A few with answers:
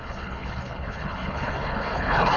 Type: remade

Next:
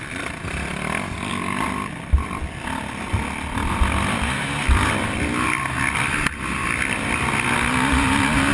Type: recorded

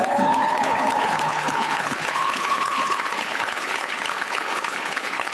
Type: remade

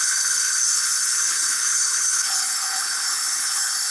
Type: remade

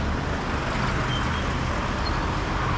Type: recorded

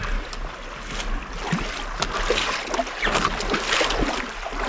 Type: recorded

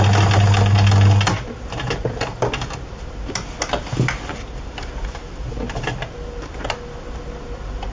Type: recorded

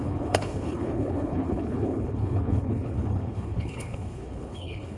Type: remade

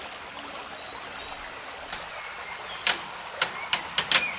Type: recorded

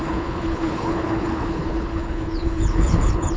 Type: remade